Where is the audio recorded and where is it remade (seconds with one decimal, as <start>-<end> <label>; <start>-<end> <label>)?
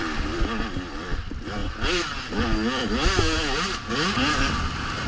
0.0-5.1 recorded